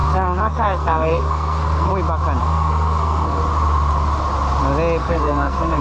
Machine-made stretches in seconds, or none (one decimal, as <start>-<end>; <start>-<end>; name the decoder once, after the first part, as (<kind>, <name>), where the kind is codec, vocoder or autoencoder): 0.0-1.9 (codec, SNAC); 2.4-3.4; 5.0-5.8